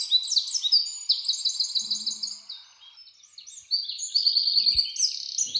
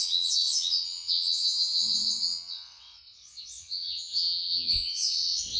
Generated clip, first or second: second